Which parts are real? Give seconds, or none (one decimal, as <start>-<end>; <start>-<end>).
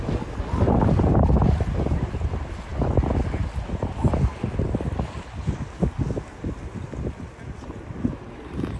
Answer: 0.0-8.8